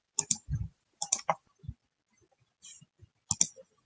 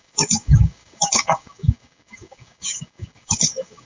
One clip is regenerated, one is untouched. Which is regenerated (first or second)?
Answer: second